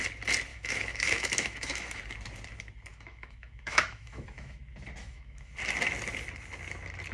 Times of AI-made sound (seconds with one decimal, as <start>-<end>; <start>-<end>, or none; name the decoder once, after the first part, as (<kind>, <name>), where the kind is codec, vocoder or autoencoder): 0.5-2.0 (autoencoder, DAC-VAE); 2.9-4.6; 5.0-5.5